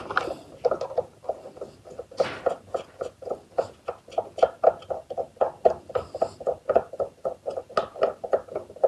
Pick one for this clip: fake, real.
real